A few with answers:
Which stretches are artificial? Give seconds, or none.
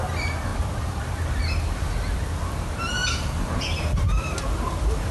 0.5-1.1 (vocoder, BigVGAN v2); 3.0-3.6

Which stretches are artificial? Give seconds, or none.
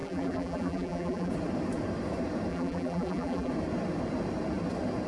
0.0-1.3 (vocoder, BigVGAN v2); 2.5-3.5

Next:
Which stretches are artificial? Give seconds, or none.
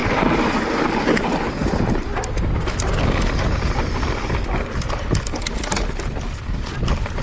0.0-0.6 (vocoder, BigVGAN v2)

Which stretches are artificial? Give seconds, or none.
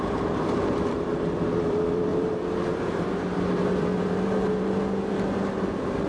0.0-6.1 (vocoder, BigVGAN v2)